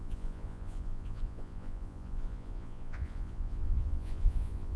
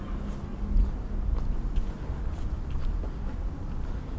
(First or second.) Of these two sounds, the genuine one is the second